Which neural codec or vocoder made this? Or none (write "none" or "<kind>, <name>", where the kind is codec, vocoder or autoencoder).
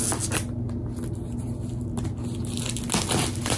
none